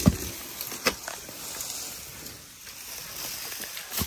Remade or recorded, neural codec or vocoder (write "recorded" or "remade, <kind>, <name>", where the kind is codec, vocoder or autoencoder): recorded